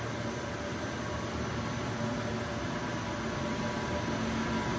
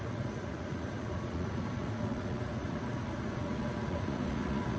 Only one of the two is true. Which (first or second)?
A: first